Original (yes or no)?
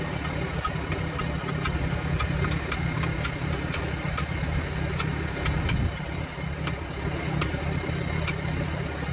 yes